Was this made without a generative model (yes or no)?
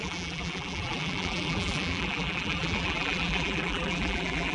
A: no